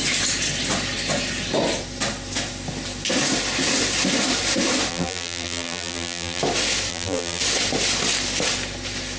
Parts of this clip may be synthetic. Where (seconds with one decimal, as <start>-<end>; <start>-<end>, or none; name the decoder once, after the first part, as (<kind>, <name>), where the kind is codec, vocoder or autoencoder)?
4.9-6.4 (vocoder, BigVGAN v2); 6.9-7.4